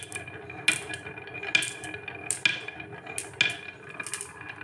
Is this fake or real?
real